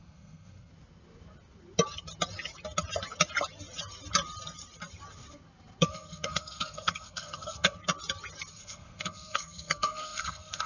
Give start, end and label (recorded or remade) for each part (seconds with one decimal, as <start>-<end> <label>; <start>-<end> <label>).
0.0-0.7 remade; 0.7-5.8 recorded; 5.8-7.8 remade; 7.8-8.5 recorded; 8.5-10.7 remade

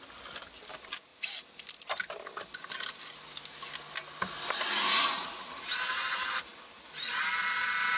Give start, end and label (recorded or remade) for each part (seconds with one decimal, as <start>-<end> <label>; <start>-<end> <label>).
0.0-8.0 recorded

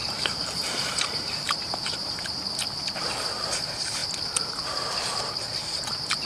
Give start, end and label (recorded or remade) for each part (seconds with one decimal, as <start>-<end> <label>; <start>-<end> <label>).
0.0-2.3 remade; 2.3-6.3 recorded

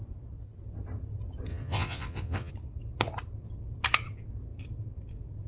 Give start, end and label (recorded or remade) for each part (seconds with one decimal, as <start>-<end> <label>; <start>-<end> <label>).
0.0-1.5 recorded; 1.5-2.5 remade; 2.5-5.5 recorded

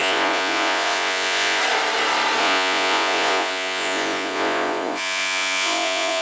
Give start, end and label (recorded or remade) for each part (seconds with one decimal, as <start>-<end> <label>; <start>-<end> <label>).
0.0-1.6 remade; 1.6-2.4 recorded; 2.4-6.2 remade

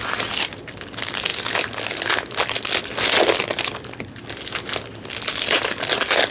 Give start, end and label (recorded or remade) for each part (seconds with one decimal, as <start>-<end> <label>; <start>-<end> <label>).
0.0-6.3 recorded